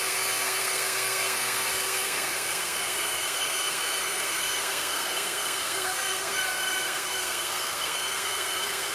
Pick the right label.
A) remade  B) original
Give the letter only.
A